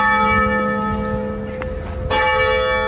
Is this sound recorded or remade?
recorded